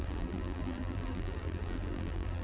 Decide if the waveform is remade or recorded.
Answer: remade